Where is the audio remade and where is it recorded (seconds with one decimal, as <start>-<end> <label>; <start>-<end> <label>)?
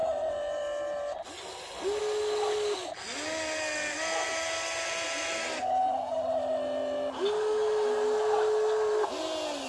0.0-9.7 recorded